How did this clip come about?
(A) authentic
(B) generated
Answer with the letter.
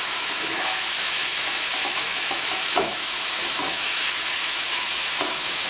B